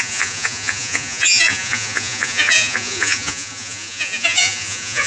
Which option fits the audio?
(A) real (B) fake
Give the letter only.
B